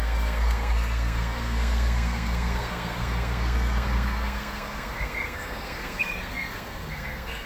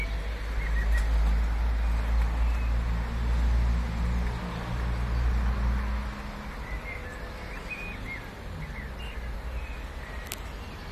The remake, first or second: first